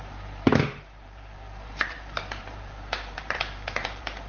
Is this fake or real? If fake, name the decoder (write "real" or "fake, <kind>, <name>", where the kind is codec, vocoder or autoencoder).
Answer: fake, vocoder, BigVGAN v2